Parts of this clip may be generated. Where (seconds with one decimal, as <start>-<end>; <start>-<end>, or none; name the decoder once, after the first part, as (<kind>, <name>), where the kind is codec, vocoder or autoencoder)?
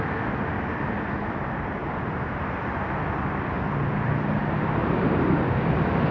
1.8-2.5 (vocoder, BigVGAN v2); 4.8-5.4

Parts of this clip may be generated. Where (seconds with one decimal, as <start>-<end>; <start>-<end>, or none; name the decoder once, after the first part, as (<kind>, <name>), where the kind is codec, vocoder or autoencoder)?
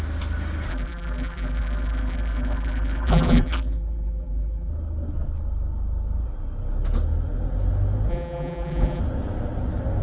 0.7-4.7 (vocoder, BigVGAN v2); 8.1-9.0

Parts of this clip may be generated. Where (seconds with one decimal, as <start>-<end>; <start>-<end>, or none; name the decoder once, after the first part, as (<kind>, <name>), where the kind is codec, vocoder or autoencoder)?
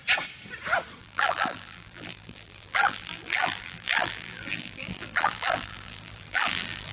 1.0-6.9 (vocoder, BigVGAN v2)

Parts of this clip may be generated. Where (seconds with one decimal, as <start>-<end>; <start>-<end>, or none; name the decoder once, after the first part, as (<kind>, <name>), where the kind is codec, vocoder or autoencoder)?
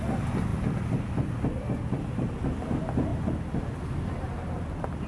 none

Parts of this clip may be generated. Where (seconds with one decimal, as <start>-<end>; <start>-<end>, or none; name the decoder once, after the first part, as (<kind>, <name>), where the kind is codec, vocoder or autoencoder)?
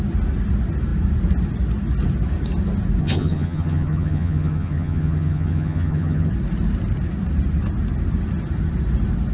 3.0-6.3 (vocoder, HiFi-GAN)